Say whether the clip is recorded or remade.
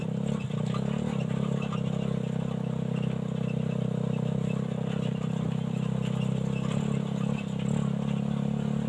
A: recorded